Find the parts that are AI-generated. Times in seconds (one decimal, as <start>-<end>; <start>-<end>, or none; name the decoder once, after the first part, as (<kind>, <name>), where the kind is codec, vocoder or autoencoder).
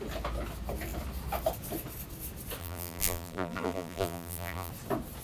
2.6-4.7 (vocoder, BigVGAN v2)